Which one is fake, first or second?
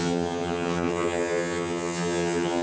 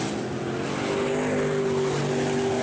first